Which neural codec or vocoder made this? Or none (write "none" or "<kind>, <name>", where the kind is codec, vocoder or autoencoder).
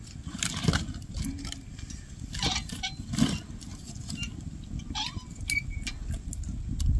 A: none